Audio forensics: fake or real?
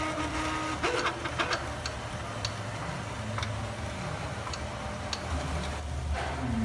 real